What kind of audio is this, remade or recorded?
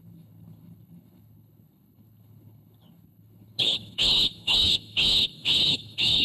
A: remade